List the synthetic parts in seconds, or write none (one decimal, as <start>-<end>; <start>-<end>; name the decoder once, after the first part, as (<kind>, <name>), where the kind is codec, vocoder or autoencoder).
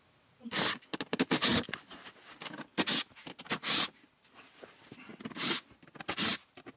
none